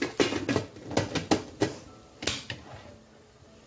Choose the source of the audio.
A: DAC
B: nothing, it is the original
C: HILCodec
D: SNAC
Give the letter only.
B